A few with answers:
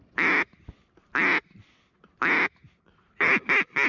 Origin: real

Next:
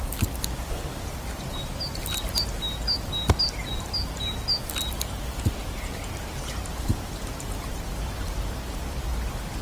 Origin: real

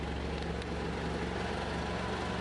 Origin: real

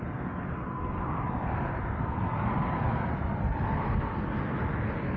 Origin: real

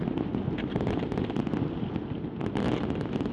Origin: real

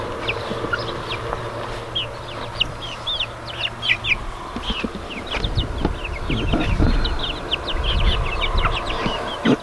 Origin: real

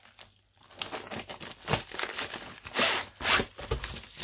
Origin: real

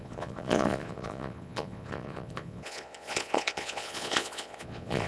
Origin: fake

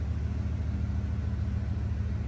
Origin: real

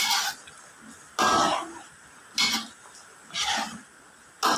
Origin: real